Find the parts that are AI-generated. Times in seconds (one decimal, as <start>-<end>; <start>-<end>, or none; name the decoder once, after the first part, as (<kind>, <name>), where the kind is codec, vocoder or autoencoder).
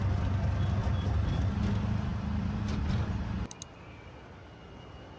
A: 0.8-1.5 (vocoder, BigVGAN v2)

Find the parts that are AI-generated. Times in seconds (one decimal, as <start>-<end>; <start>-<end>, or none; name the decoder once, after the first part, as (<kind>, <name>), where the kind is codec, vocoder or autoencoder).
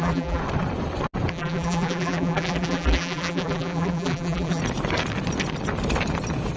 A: 0.0-0.4 (vocoder, BigVGAN v2); 1.3-4.6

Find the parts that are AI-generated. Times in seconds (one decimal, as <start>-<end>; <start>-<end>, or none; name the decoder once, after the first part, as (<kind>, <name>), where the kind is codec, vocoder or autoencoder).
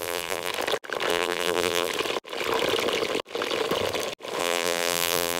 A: 0.0-0.5 (vocoder, BigVGAN v2); 1.1-1.9; 4.4-5.4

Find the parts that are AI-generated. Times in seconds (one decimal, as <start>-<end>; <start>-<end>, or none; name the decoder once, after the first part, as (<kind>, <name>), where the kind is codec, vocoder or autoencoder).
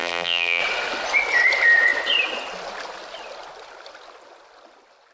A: 0.0-0.6 (vocoder, BigVGAN v2)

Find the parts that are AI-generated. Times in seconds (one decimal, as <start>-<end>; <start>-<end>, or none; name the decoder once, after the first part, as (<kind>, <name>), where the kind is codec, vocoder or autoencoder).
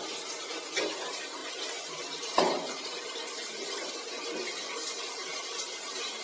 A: 1.4-3.9 (vocoder, BigVGAN v2); 5.2-6.2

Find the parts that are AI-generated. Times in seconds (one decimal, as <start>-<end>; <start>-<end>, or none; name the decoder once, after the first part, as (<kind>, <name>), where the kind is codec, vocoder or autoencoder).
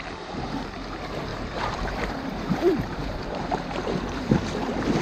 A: 1.3-4.3 (vocoder, BigVGAN v2)